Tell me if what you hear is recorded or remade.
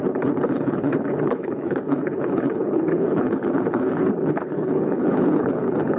remade